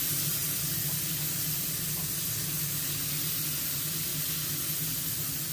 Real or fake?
real